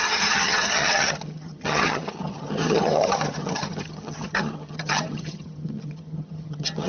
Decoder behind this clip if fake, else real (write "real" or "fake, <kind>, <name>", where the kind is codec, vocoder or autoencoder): fake, vocoder, HiFi-GAN